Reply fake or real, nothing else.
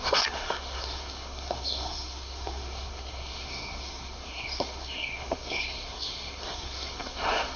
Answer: fake